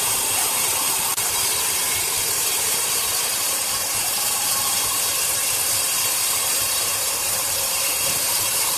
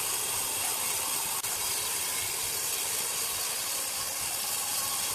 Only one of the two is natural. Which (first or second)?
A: second